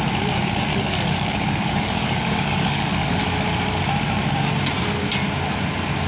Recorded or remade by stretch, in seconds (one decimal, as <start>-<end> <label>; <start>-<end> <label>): 0.0-0.7 recorded; 0.7-3.2 remade; 3.2-6.1 recorded